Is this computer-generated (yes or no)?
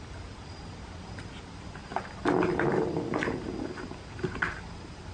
no